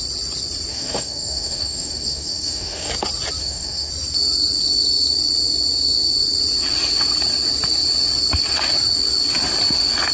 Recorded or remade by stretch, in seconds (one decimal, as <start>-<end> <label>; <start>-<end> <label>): 0.0-0.7 recorded; 0.7-2.9 remade; 2.9-3.4 recorded; 3.4-3.9 remade; 3.9-10.1 recorded